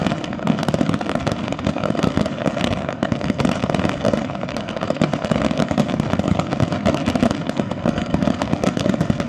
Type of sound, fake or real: fake